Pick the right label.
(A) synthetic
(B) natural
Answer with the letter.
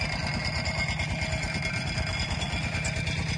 B